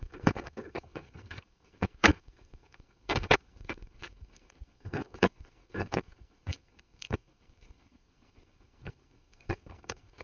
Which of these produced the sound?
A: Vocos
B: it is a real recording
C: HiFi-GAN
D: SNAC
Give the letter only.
D